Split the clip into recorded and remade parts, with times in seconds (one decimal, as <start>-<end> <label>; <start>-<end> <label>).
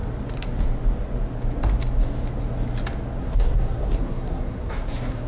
0.0-3.2 recorded; 3.2-5.3 remade